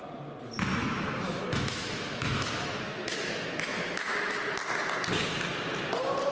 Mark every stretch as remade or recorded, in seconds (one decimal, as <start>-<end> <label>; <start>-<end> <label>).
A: 0.0-0.8 recorded; 0.8-4.4 remade; 4.4-6.3 recorded